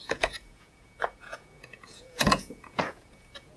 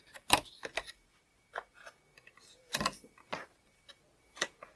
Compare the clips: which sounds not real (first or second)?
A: first